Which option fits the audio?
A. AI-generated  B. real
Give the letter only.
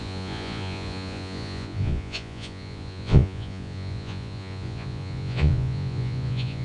A